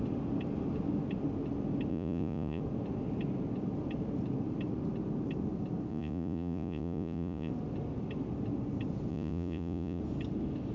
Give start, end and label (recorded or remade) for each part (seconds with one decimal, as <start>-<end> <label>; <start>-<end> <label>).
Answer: 0.0-1.9 recorded; 1.9-2.6 remade; 2.6-5.9 recorded; 5.9-7.5 remade; 7.5-9.1 recorded; 9.1-10.0 remade; 10.0-10.7 recorded